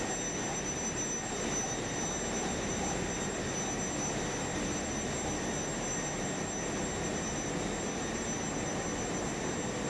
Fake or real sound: real